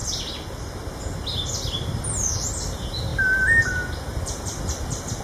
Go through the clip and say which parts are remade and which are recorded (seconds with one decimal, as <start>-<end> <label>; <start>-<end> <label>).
0.0-5.2 recorded